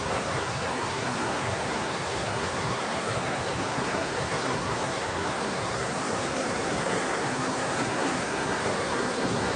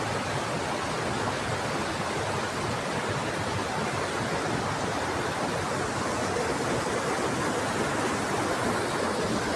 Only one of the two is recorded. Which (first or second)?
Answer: second